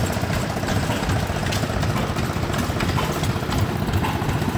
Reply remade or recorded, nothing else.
recorded